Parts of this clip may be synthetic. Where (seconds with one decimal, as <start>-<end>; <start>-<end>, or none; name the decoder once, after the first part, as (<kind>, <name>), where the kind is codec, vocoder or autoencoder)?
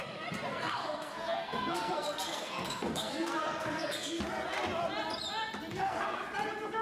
0.5-4.2 (codec, SNAC); 5.7-6.2